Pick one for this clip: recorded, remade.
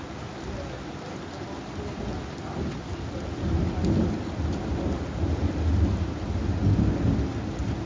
recorded